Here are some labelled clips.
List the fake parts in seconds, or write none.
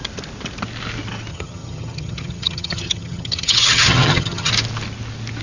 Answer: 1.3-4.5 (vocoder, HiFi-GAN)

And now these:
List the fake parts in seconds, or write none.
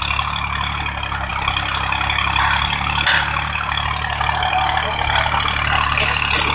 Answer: none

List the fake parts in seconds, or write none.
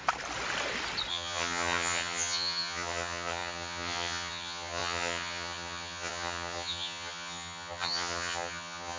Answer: 1.1-9.0 (vocoder, HiFi-GAN)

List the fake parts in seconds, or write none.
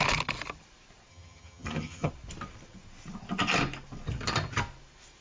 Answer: 1.1-2.1 (vocoder, HiFi-GAN)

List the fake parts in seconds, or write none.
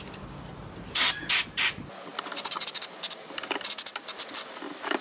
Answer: none